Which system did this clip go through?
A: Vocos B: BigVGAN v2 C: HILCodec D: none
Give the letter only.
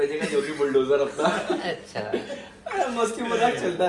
D